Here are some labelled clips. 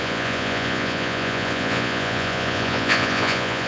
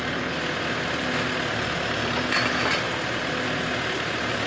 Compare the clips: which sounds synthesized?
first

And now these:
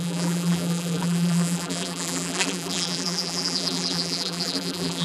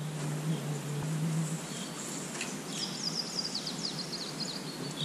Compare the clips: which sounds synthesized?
first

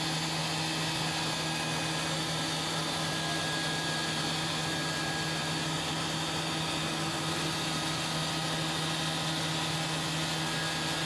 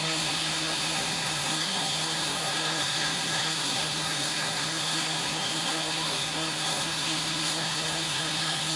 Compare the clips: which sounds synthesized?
second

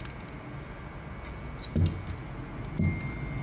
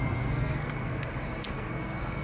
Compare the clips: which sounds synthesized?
second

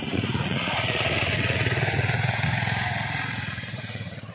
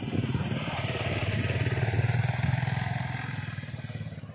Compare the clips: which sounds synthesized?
first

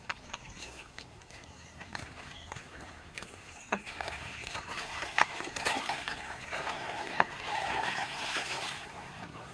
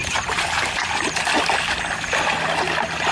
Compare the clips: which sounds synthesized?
first